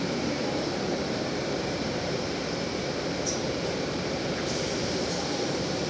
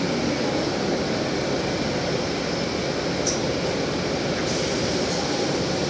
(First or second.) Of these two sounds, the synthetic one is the first